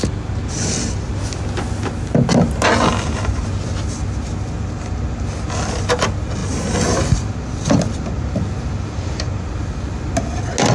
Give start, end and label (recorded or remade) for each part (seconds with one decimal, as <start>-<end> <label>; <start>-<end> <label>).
0.0-6.4 recorded; 6.4-9.9 remade; 9.9-10.7 recorded